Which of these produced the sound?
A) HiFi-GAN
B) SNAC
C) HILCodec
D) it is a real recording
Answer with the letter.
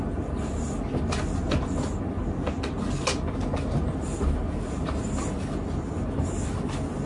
D